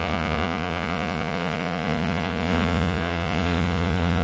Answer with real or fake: fake